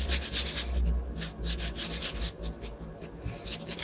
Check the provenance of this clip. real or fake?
real